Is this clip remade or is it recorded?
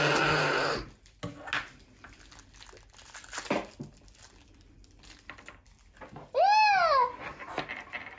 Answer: recorded